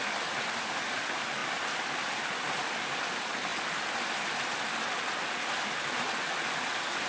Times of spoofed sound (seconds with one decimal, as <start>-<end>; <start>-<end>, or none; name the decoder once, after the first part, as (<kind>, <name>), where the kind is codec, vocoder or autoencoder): none